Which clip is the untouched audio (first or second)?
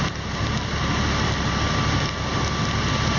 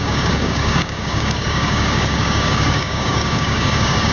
first